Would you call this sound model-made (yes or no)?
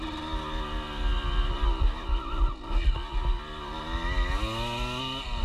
no